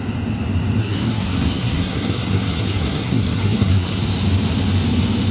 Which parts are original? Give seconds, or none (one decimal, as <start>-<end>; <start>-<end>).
0.0-0.8; 4.0-5.3